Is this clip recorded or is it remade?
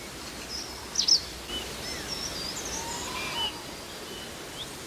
recorded